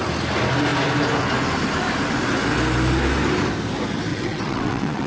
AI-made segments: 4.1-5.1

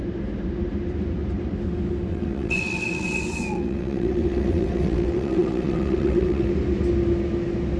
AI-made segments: 2.1-6.5

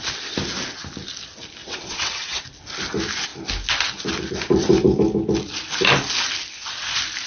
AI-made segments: 1.6-2.4